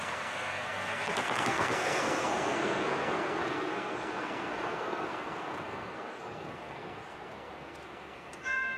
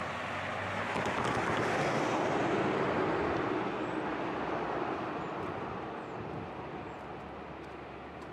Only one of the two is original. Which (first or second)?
second